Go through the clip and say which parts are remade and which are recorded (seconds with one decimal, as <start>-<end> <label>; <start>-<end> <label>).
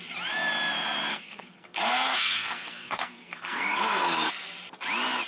0.0-1.1 recorded; 1.1-4.3 remade; 4.3-5.3 recorded